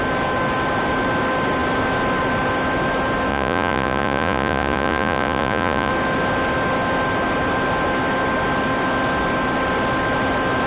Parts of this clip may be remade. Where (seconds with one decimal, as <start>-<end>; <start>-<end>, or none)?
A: 3.3-5.9